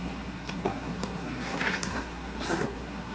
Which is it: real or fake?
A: fake